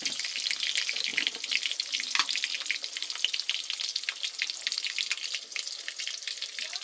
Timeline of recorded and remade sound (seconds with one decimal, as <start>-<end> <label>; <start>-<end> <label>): 0.0-6.8 recorded